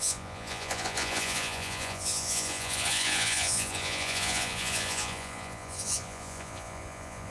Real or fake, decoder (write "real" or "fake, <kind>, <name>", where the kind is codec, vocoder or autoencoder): fake, vocoder, Vocos